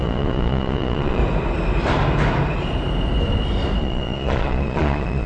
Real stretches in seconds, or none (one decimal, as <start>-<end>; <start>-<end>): 1.2-3.8

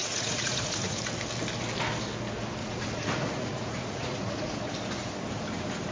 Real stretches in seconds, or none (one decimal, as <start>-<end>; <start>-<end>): 1.0-2.6; 4.5-5.9

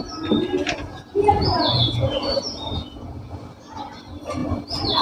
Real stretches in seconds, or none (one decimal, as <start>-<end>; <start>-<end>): 0.0-0.9; 3.3-5.0

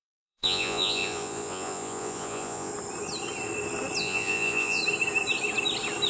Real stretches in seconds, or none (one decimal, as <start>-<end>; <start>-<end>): 2.7-4.0; 4.8-6.1